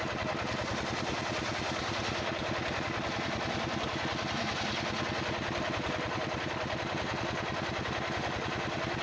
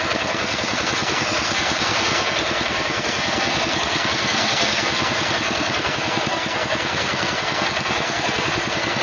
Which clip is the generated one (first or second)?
second